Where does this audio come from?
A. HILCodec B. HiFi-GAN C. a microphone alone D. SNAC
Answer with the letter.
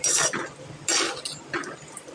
C